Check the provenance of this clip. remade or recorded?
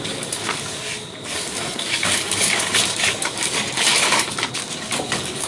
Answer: remade